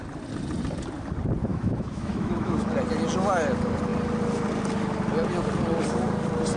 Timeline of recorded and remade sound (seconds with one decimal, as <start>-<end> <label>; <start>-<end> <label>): 0.0-1.5 recorded; 1.5-2.7 remade; 2.7-6.6 recorded